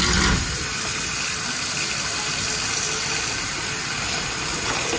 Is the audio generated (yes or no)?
no